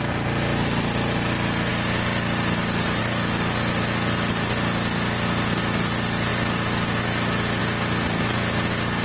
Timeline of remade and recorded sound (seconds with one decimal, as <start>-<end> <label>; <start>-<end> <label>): 0.0-9.0 recorded